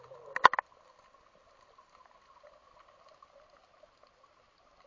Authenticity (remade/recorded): recorded